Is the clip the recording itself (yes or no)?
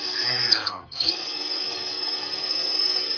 no